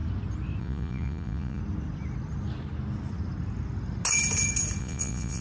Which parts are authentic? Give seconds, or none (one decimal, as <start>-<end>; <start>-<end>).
0.0-0.6; 1.6-4.8

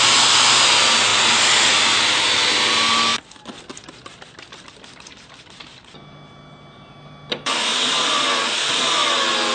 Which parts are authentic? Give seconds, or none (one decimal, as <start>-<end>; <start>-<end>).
0.0-9.5

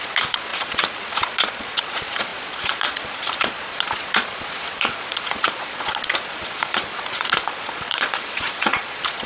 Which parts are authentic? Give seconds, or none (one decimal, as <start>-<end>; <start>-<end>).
none

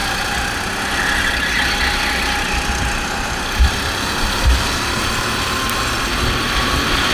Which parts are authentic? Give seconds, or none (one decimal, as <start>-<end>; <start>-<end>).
0.0-3.4

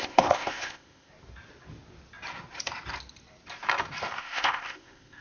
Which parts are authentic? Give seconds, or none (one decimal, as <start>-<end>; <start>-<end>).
1.1-4.2